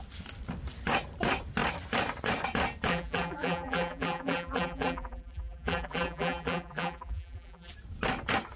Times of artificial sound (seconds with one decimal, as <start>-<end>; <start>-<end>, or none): 2.9-7.7